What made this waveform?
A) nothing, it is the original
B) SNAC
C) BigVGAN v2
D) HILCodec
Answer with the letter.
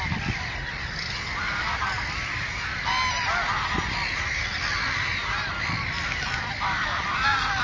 A